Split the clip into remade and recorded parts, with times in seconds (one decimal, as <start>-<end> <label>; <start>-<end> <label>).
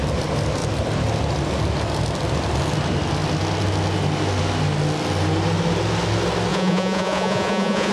0.0-6.5 recorded; 6.5-7.9 remade